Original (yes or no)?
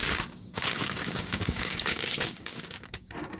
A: no